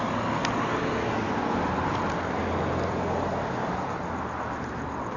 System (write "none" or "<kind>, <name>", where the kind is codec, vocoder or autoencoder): none